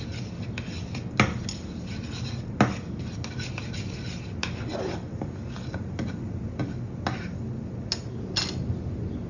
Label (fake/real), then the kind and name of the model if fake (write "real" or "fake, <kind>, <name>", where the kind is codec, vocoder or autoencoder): real